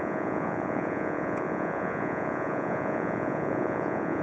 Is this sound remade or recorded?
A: remade